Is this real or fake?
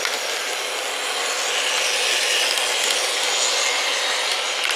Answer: real